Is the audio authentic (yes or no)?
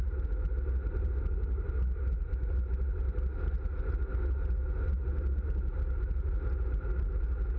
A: yes